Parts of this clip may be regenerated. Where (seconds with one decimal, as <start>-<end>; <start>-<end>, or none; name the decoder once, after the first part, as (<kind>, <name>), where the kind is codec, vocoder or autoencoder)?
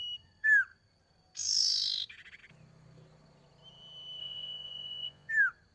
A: 4.2-5.3 (vocoder, Vocos)